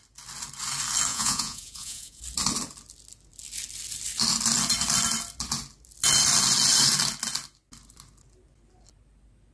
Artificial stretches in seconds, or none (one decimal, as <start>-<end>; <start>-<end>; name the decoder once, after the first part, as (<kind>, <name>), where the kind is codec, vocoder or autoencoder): 1.1-2.2 (vocoder, Vocos)